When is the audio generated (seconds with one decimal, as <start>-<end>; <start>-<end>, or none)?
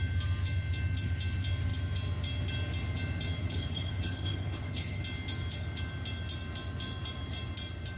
3.4-5.0